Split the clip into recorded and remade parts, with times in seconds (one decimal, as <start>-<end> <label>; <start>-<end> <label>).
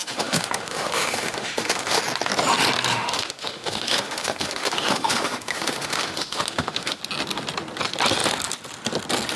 0.0-2.0 remade; 2.0-2.9 recorded; 2.9-7.0 remade; 7.0-9.4 recorded